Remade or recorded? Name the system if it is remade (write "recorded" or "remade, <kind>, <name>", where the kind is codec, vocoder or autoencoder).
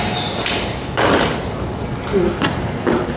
recorded